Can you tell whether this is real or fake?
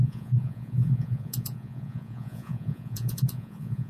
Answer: fake